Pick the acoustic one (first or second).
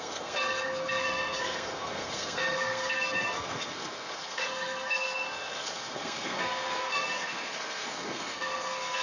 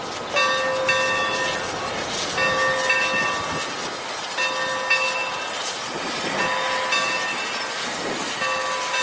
second